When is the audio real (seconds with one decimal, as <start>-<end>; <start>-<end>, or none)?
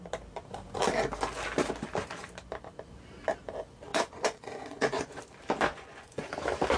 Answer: 0.0-3.9; 5.2-5.7; 6.3-6.8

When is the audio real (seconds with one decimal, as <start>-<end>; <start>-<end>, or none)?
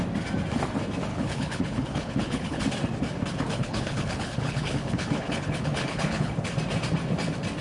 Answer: 0.0-1.1; 2.6-3.5; 6.5-7.6